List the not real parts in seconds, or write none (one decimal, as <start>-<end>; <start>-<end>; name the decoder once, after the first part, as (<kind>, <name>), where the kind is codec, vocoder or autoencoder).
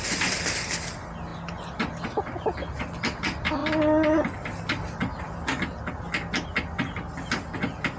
none